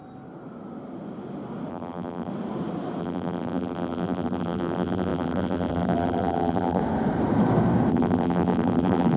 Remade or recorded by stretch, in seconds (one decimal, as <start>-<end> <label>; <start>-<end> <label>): 0.0-1.7 recorded; 1.7-2.3 remade; 2.3-3.0 recorded; 3.0-6.8 remade; 6.8-7.9 recorded; 7.9-9.2 remade